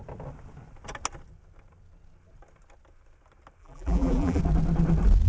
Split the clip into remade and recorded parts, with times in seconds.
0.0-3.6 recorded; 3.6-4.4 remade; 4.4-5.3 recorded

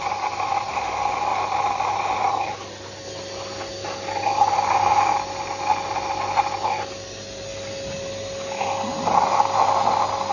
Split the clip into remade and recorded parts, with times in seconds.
0.0-10.3 recorded

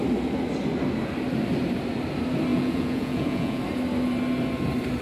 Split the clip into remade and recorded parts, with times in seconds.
0.0-2.5 recorded; 2.5-3.6 remade; 3.6-5.0 recorded

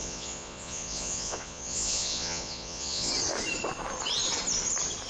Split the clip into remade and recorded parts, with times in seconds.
0.0-3.1 remade; 3.1-5.1 recorded

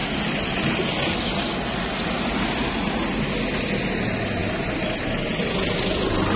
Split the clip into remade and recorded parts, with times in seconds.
0.0-6.4 recorded

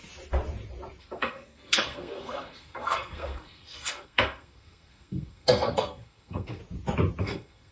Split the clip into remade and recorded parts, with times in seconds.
0.0-1.0 recorded; 1.0-6.6 remade; 6.6-7.2 recorded; 7.2-7.7 remade